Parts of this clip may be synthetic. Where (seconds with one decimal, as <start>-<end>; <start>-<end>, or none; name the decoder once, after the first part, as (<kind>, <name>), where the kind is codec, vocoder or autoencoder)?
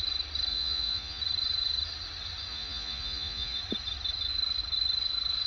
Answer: 0.5-1.2 (vocoder, Vocos); 2.5-3.6